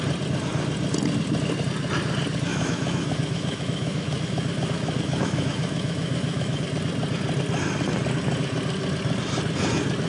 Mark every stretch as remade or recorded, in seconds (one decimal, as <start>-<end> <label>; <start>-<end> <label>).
0.0-2.5 recorded; 2.5-6.6 remade; 6.6-10.1 recorded